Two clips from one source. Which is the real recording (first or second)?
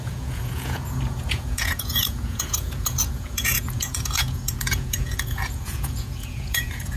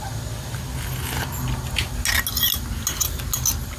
second